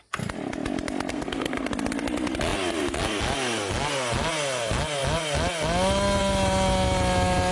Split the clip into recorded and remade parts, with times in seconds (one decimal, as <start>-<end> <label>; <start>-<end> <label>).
0.0-1.1 recorded; 1.1-1.7 remade; 1.7-7.5 recorded